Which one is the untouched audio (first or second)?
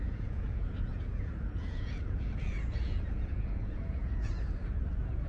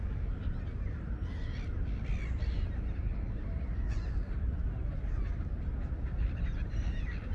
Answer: second